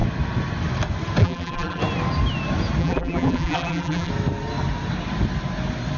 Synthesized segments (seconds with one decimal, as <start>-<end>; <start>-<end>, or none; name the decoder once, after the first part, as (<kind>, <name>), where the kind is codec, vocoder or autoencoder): 1.2-1.8 (vocoder, BigVGAN v2); 2.8-4.1